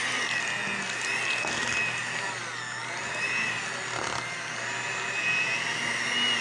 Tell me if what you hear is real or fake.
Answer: real